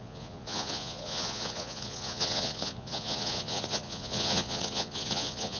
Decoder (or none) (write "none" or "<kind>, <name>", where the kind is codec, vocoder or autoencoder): vocoder, Vocos